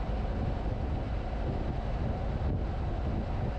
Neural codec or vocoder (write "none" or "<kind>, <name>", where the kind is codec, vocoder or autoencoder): none